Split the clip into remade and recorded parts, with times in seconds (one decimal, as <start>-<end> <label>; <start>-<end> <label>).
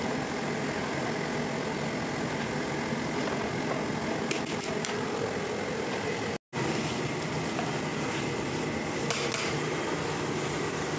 0.0-11.0 recorded